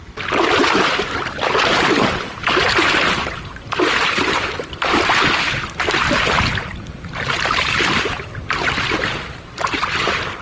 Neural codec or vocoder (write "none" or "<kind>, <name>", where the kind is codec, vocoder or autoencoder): none